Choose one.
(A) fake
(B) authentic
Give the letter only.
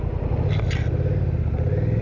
B